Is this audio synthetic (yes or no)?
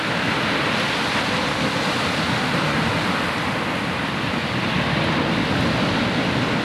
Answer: no